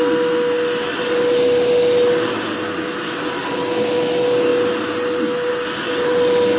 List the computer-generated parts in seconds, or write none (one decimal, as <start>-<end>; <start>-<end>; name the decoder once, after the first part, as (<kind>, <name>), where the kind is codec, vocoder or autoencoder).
none